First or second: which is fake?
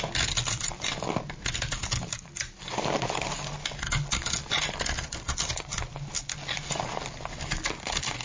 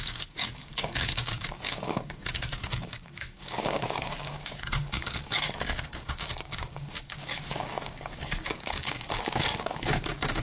second